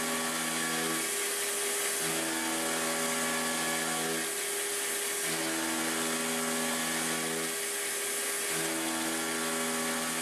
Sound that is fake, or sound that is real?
real